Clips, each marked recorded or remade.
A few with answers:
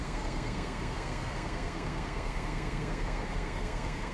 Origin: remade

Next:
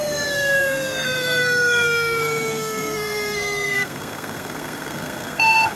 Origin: remade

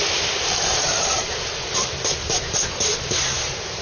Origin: recorded